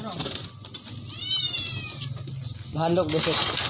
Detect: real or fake real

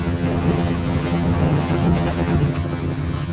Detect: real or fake fake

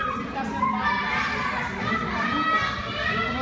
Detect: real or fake real